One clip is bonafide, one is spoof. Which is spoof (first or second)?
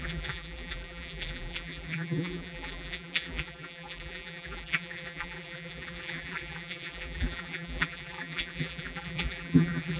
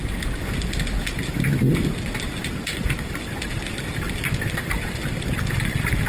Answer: first